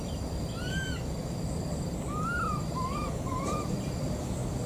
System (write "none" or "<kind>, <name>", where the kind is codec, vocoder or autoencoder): none